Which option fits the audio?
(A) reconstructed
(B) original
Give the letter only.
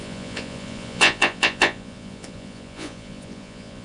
A